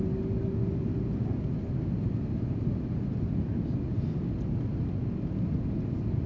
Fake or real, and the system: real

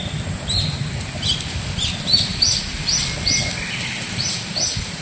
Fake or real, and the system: real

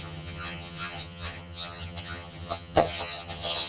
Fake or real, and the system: fake, vocoder, HiFi-GAN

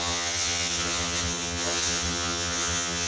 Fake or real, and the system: fake, vocoder, HiFi-GAN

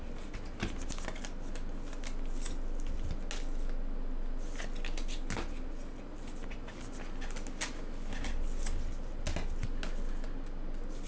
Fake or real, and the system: real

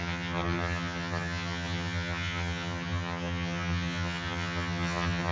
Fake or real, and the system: fake, vocoder, HiFi-GAN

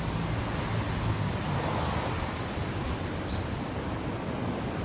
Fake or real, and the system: real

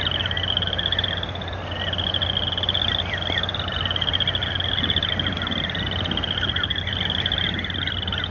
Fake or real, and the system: real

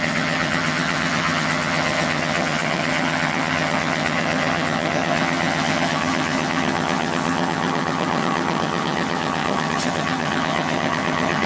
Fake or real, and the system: fake, vocoder, HiFi-GAN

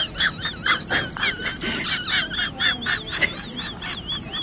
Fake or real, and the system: real